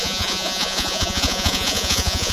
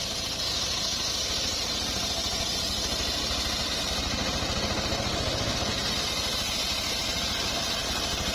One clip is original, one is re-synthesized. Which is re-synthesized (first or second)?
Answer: first